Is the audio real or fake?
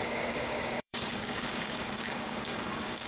fake